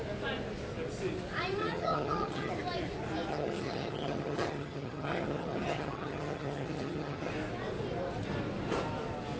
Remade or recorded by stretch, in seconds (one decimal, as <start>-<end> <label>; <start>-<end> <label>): 0.0-1.6 recorded; 1.6-2.5 remade; 2.5-3.3 recorded; 3.3-7.3 remade; 7.3-9.4 recorded